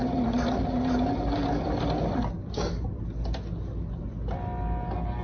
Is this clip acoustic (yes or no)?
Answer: yes